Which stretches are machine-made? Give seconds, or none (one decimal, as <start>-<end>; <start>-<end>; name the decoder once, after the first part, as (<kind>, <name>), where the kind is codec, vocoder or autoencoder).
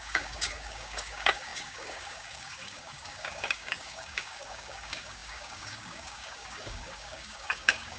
0.0-8.0 (codec, DAC)